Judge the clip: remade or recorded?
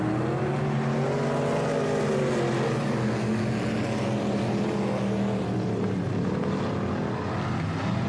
recorded